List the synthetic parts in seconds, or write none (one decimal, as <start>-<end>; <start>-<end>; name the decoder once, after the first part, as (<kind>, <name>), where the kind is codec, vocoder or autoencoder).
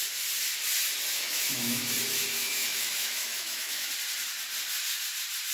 1.1-1.8 (autoencoder, DAC-VAE); 2.4-3.9